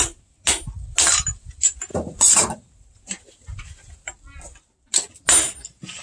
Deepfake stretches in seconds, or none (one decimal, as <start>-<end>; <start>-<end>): 1.9-4.0